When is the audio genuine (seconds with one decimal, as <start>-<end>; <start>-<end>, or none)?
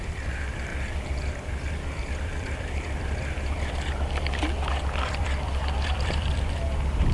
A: 0.7-1.2